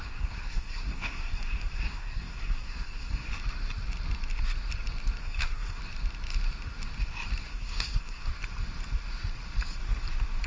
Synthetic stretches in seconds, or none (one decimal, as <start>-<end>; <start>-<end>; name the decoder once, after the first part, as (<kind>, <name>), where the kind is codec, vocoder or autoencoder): 0.0-3.3 (codec, SNAC); 5.2-5.8; 7.4-8.3